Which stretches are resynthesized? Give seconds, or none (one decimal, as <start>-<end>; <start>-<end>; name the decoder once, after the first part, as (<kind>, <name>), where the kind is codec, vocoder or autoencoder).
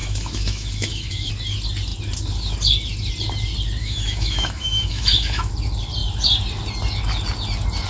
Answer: 0.0-1.3 (autoencoder, DAC-VAE); 3.8-5.5